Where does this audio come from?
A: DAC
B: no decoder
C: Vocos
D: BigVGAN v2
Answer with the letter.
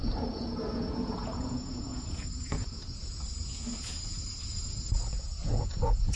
C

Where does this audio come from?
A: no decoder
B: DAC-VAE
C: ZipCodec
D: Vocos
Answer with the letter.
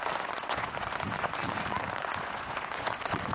D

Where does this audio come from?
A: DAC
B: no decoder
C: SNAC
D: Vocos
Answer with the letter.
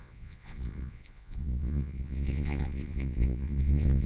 D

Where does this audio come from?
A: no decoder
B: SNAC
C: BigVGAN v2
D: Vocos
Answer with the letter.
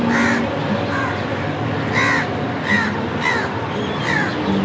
A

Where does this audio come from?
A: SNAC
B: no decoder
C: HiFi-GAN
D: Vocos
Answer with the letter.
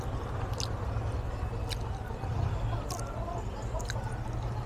B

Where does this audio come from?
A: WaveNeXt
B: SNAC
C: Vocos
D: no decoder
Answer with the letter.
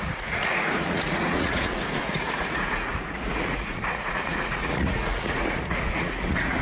C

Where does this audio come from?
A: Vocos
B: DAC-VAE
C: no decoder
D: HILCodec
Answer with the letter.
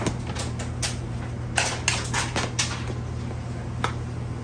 C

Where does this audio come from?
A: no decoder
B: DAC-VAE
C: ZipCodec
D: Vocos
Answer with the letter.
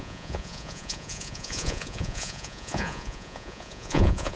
D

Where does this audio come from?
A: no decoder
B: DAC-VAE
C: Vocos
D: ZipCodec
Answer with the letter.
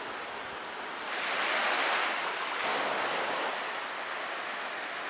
A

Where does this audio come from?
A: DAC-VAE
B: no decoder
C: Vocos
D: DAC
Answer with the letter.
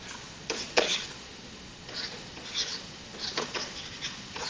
C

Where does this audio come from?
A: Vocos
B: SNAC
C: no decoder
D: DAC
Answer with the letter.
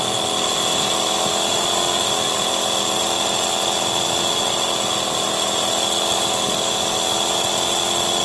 C